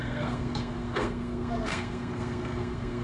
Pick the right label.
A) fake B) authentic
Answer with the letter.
A